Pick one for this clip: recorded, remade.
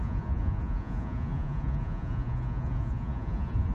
remade